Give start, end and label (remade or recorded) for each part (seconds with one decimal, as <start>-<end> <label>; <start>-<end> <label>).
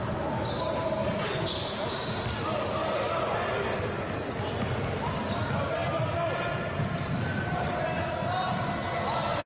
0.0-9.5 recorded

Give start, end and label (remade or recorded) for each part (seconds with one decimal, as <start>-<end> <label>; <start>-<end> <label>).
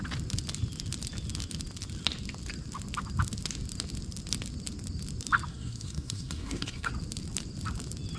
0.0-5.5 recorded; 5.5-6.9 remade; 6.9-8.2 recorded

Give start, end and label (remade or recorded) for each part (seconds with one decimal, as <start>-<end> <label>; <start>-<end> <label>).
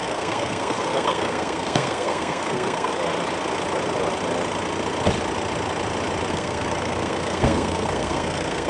0.0-2.9 remade; 2.9-6.3 recorded; 6.3-8.7 remade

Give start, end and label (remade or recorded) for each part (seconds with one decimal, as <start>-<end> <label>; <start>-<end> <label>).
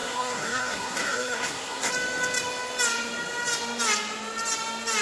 0.0-1.9 remade; 1.9-5.0 recorded